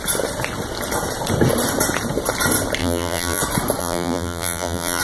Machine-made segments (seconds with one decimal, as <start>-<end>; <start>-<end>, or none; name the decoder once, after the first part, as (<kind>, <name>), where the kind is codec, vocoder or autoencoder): 2.8-3.4 (vocoder, BigVGAN v2); 3.8-5.0